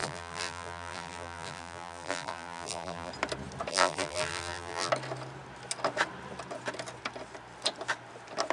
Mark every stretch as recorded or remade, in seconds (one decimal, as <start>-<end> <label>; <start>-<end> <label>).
0.0-3.1 remade; 3.1-3.7 recorded; 3.7-4.9 remade; 4.9-8.5 recorded